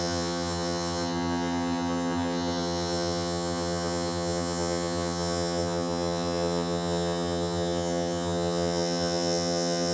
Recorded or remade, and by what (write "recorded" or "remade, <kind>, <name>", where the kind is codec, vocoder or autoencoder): remade, vocoder, HiFi-GAN